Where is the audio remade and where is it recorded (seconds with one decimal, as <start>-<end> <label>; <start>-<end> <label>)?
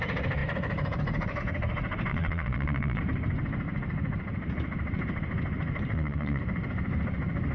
0.0-2.1 recorded; 2.1-3.0 remade; 3.0-5.9 recorded; 5.9-6.4 remade; 6.4-7.5 recorded